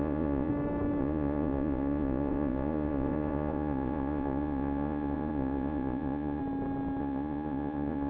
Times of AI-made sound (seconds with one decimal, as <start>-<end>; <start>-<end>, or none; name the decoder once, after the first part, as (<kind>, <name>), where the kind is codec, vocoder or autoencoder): 0.0-0.5 (vocoder, Vocos); 1.0-6.4; 7.0-8.1